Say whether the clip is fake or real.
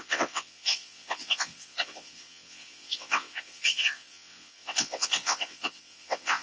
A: fake